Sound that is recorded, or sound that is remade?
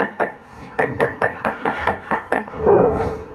remade